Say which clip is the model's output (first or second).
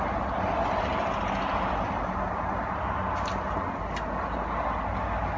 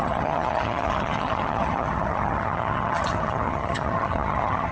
second